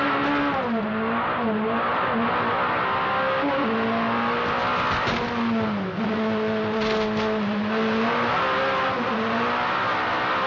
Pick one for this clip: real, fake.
real